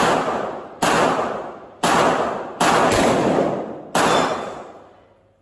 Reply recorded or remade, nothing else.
recorded